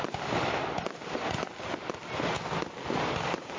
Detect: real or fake real